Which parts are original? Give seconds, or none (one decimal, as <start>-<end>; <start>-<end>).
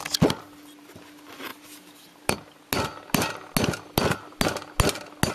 0.0-5.3